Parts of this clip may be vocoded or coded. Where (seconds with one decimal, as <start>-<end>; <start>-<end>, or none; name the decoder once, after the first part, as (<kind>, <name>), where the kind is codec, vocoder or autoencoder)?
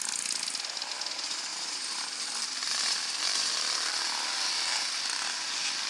1.5-5.0 (vocoder, BigVGAN v2)